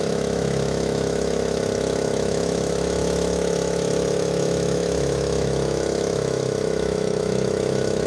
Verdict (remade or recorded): remade